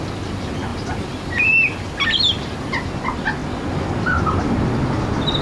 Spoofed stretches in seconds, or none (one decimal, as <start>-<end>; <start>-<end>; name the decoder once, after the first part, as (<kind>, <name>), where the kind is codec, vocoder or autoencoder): none

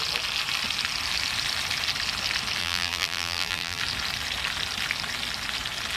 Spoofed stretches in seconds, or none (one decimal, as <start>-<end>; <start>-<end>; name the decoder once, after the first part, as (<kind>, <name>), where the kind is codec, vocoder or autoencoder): 2.6-3.8 (vocoder, BigVGAN v2)

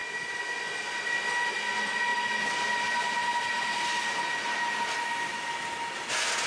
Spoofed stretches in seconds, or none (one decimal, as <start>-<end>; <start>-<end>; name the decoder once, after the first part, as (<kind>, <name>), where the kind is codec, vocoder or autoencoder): none

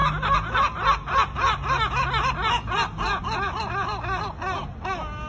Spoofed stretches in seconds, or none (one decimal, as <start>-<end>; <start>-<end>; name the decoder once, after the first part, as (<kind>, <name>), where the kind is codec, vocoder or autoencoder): none

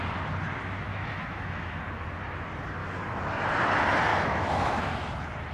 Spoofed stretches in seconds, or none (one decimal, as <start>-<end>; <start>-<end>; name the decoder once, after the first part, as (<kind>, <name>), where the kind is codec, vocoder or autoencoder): 0.9-1.8 (autoencoder, DAC-VAE); 2.8-3.3; 4.1-5.1